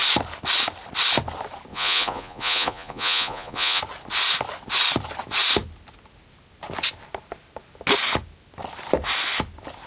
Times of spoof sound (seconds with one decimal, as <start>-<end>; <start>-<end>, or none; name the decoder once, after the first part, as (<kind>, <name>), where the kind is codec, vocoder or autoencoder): 1.7-3.8 (vocoder, Vocos)

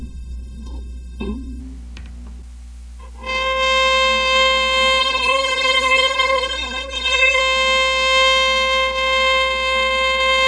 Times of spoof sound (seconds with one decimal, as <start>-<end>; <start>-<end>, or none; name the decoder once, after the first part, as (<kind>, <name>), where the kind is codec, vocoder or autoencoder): 0.0-1.6 (codec, SNAC); 5.0-7.4